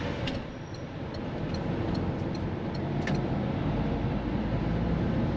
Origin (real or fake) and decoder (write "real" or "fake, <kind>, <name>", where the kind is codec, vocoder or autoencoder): real